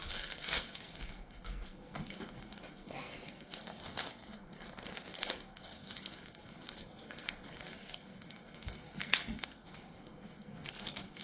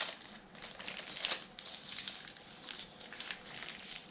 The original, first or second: second